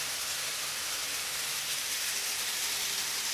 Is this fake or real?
real